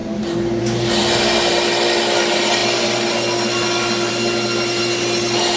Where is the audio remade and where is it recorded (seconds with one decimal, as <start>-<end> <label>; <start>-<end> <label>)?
0.0-5.6 recorded